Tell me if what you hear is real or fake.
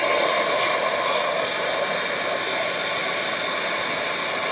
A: real